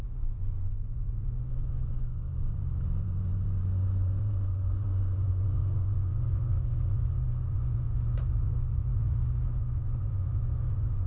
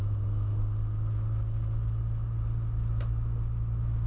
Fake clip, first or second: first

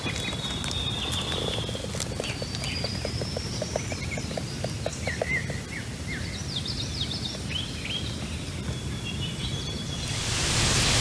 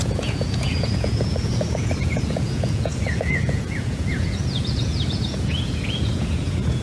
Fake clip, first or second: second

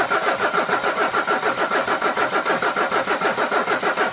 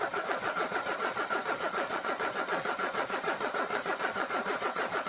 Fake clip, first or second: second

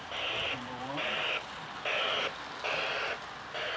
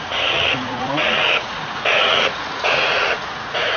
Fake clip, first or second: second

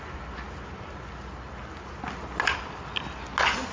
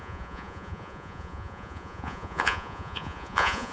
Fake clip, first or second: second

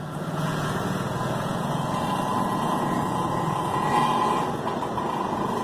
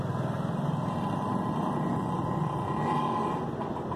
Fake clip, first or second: first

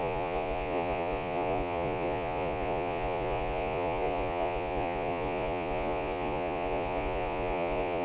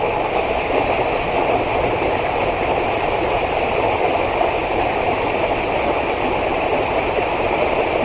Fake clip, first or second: first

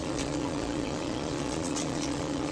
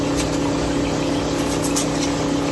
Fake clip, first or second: first